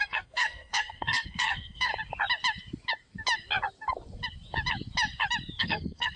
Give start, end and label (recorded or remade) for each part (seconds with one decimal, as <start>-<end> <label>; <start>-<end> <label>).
0.0-1.9 remade; 1.9-5.6 recorded; 5.6-6.2 remade